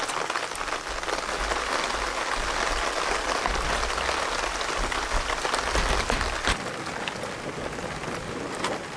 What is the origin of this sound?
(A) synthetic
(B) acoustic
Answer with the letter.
B